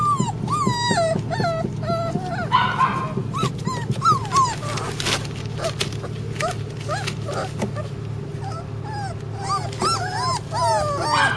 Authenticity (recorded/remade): recorded